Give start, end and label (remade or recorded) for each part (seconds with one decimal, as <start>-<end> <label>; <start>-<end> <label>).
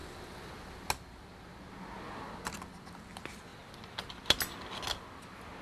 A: 0.0-5.6 recorded